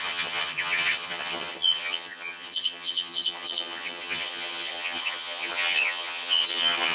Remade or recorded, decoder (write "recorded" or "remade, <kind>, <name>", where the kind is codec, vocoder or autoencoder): remade, vocoder, HiFi-GAN